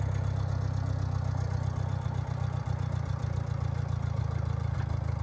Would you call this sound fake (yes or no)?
no